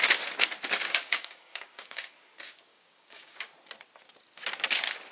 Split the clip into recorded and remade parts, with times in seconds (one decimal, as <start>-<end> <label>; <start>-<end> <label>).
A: 0.0-0.8 recorded; 0.8-2.1 remade; 2.1-2.7 recorded; 2.7-3.5 remade; 3.5-5.1 recorded